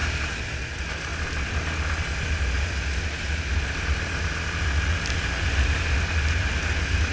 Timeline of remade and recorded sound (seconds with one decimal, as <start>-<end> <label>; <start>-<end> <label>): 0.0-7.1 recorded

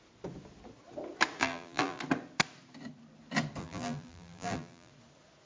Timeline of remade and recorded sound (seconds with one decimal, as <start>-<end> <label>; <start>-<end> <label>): 0.0-1.4 recorded; 1.4-2.0 remade; 2.0-3.6 recorded; 3.6-4.9 remade; 4.9-5.5 recorded

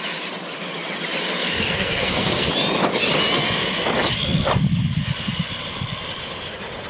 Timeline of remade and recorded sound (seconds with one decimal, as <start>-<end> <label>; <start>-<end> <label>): 0.0-1.4 recorded; 1.4-2.5 remade; 2.5-6.9 recorded

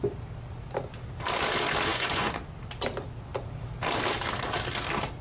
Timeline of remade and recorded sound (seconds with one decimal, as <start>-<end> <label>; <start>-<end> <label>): 0.0-1.9 recorded; 1.9-2.4 remade; 2.4-5.2 recorded

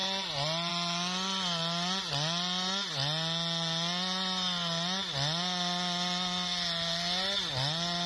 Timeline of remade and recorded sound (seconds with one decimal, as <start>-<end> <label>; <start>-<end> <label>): 0.0-8.1 recorded

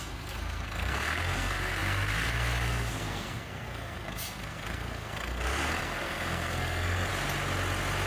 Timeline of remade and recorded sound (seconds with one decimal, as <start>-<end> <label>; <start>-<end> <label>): 0.0-7.1 remade; 7.1-8.1 recorded

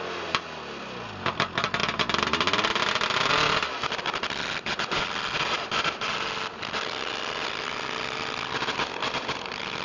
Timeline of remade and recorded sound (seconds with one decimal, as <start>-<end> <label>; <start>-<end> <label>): 0.0-9.8 recorded